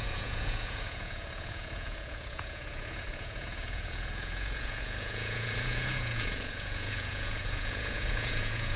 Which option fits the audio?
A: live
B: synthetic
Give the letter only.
B